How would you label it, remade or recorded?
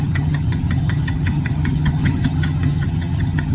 remade